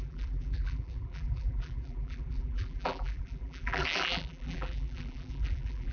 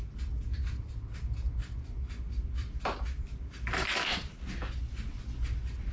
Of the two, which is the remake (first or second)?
first